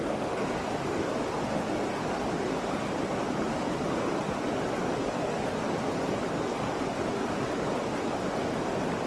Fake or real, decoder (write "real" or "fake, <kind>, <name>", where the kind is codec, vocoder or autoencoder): real